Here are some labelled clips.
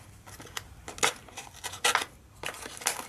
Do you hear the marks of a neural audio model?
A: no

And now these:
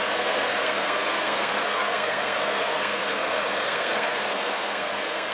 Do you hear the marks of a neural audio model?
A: yes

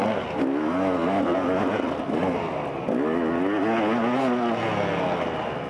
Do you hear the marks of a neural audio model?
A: no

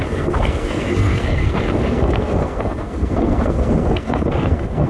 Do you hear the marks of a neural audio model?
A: yes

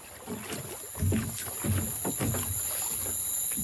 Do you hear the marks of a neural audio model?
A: no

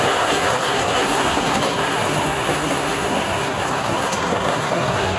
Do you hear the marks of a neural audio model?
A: yes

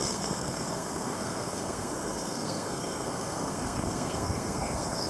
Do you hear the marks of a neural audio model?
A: yes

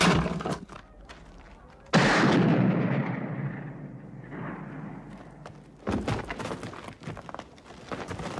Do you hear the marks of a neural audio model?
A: no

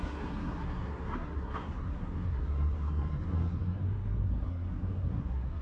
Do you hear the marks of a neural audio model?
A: yes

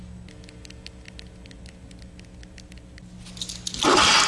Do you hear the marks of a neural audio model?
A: no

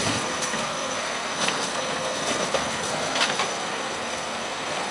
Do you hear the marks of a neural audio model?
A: yes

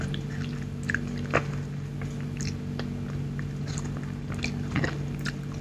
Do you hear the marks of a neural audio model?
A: no